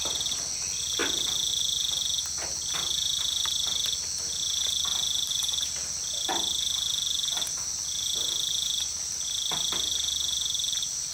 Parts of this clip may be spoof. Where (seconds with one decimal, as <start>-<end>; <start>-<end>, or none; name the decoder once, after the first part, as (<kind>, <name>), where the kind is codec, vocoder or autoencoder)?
none